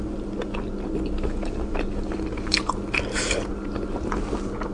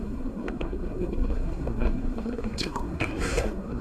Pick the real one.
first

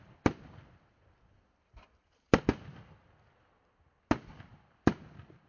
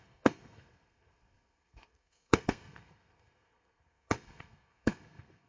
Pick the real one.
first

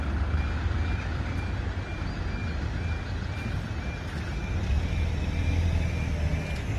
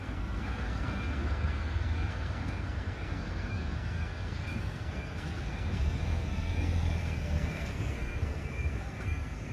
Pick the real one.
first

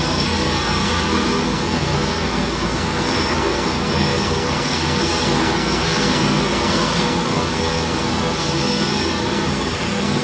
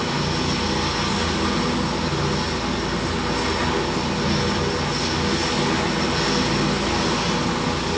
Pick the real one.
second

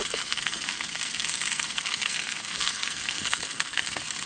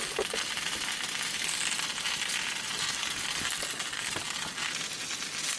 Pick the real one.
second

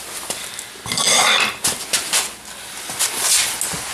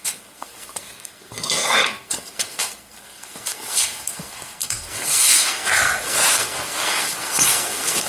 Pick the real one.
first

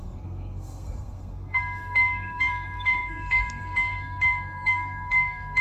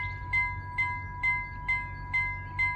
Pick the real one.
second